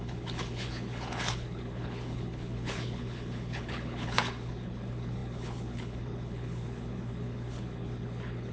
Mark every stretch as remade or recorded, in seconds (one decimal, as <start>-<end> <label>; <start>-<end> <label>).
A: 0.0-8.5 remade